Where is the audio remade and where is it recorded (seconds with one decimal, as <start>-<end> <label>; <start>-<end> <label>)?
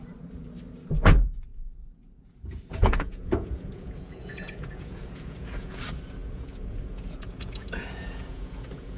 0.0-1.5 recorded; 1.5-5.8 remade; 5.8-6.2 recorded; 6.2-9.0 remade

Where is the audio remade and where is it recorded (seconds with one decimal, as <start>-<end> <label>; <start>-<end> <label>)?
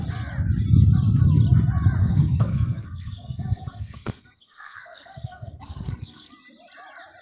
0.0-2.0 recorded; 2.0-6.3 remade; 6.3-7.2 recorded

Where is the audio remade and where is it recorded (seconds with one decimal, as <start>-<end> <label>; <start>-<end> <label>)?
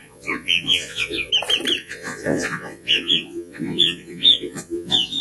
0.0-1.3 remade; 1.3-1.8 recorded; 1.8-5.2 remade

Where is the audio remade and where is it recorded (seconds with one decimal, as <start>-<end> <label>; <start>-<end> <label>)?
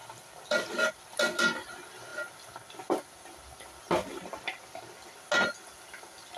0.0-0.9 remade; 0.9-6.4 recorded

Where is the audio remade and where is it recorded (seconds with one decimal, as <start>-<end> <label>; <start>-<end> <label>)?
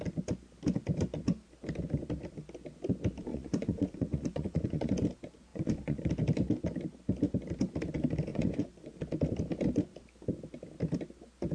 0.0-3.3 recorded; 3.3-4.9 remade; 4.9-5.5 recorded; 5.5-6.1 remade; 6.1-8.3 recorded; 8.3-8.9 remade; 8.9-11.5 recorded